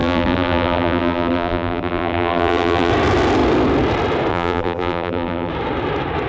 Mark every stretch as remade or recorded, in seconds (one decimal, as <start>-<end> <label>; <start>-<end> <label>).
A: 0.0-2.9 remade; 2.9-4.3 recorded; 4.3-5.5 remade; 5.5-6.3 recorded